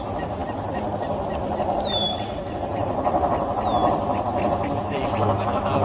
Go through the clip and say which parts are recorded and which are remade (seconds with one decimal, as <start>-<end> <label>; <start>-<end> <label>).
0.0-5.8 recorded